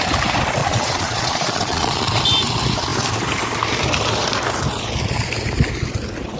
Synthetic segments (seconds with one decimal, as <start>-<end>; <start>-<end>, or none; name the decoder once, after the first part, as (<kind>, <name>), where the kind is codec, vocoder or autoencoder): 0.6-2.2 (vocoder, Vocos)